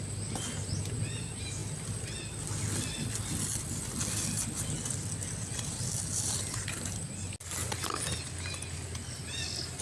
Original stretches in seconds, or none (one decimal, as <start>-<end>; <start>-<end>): 0.0-9.8